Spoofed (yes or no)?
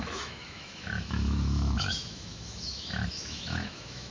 yes